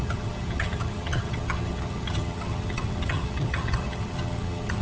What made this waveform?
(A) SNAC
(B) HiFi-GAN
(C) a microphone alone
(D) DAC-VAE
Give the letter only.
B